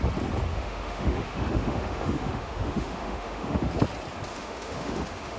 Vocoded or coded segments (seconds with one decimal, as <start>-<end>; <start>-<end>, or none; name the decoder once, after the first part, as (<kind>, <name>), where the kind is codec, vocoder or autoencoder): 0.5-3.7 (autoencoder, DAC-VAE); 4.3-5.4